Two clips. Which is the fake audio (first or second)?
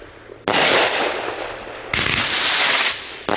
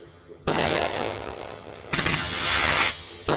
second